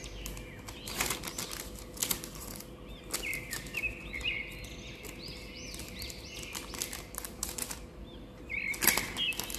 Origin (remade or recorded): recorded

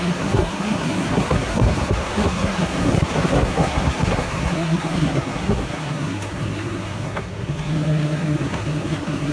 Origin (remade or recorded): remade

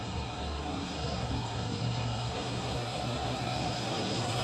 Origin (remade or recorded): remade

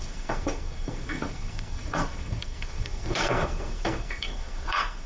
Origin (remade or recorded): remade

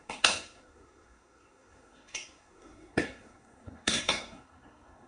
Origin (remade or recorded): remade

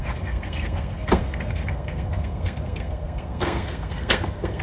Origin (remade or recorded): remade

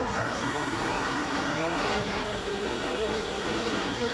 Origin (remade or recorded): remade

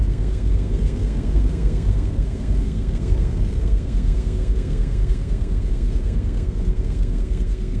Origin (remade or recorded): remade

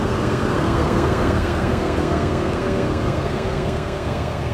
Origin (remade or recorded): remade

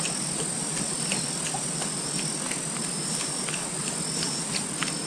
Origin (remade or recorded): recorded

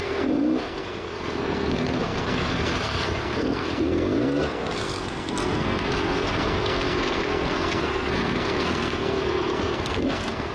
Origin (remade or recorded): remade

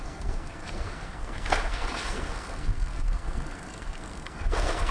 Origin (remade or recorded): remade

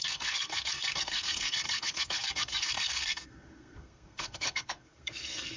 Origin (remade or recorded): remade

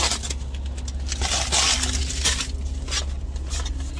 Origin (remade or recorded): recorded